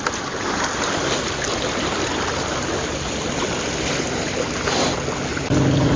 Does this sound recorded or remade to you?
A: recorded